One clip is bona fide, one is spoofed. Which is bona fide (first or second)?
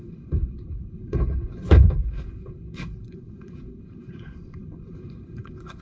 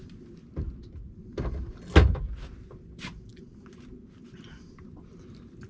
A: second